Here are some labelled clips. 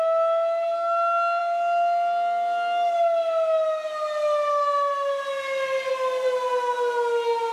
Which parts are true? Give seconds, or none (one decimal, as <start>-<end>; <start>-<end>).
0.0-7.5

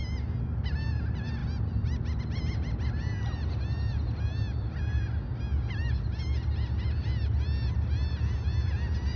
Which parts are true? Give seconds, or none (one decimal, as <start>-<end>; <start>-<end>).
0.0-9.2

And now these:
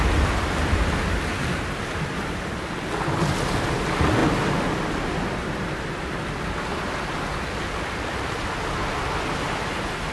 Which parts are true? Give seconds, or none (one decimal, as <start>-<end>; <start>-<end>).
0.0-10.1

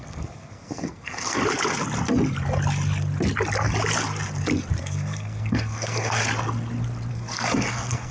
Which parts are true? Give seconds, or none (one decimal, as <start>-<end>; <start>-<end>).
1.4-4.8; 6.2-7.1

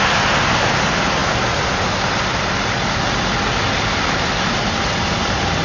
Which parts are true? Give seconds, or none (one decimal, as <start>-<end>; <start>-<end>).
0.0-5.6

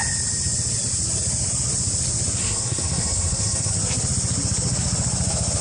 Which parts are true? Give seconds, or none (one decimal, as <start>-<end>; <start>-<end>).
0.0-2.4; 3.7-5.6